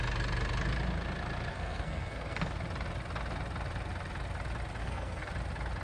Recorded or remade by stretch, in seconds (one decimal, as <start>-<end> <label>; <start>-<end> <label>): 0.0-1.5 recorded; 1.5-2.5 remade; 2.5-4.8 recorded; 4.8-5.3 remade; 5.3-5.8 recorded